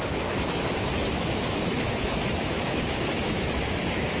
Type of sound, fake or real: fake